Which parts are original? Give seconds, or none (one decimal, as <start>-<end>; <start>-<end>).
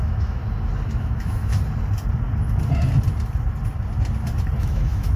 0.4-0.9; 1.5-4.6